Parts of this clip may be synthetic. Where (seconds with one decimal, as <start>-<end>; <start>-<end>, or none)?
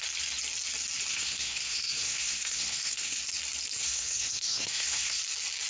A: 1.1-3.2; 3.8-5.2